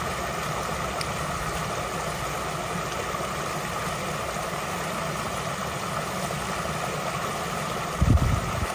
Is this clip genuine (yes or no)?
yes